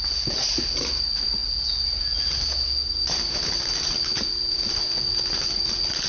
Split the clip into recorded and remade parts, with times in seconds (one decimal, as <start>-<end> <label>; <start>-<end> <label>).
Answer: 0.0-6.1 recorded